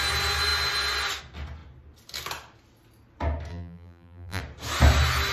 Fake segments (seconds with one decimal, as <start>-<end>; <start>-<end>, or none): 3.5-4.4